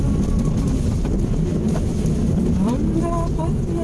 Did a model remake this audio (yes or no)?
no